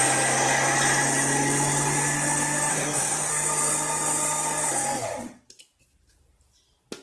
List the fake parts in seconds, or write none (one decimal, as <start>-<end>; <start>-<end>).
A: 2.7-3.3